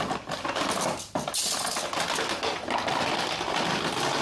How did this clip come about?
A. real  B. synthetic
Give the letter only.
A